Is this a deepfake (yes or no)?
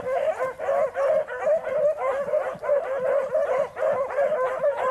no